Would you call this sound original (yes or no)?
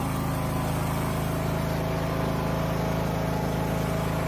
yes